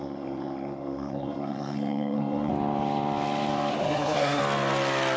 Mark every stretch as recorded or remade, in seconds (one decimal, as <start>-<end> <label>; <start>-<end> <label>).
0.0-2.5 remade; 2.5-3.7 recorded; 3.7-4.4 remade; 4.4-5.2 recorded